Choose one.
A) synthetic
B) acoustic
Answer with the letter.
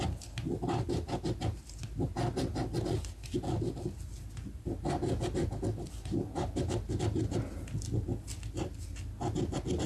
B